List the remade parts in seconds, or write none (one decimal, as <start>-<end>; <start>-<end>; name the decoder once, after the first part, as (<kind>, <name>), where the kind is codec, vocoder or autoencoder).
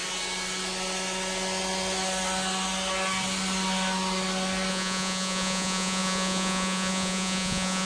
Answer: 4.7-7.8 (vocoder, Vocos)